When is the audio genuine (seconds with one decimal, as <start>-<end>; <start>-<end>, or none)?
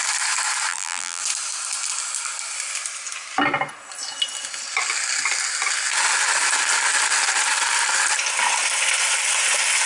0.0-0.7; 1.2-9.9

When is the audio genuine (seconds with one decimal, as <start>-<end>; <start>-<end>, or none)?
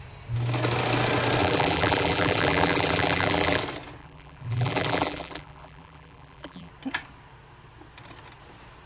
0.0-1.4; 3.6-4.0; 6.7-8.9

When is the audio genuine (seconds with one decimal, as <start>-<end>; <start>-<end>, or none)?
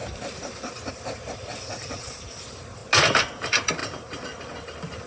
2.8-3.4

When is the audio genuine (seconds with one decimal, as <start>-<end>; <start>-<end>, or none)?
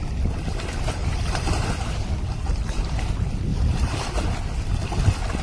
0.0-1.0; 1.7-2.5; 3.1-3.5; 4.1-5.4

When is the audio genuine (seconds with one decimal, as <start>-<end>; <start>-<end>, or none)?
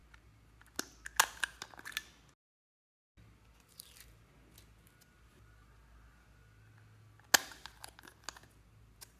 0.0-9.2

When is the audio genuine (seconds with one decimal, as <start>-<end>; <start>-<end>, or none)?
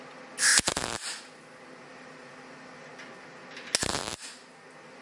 0.0-1.9; 2.9-5.0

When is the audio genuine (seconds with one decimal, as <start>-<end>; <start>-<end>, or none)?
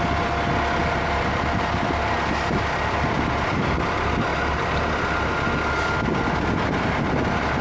0.0-0.8; 2.5-4.3; 4.9-7.6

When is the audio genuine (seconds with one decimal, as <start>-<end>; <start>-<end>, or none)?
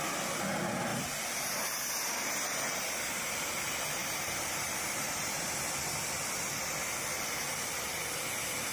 0.0-0.9; 1.9-4.0; 5.6-8.7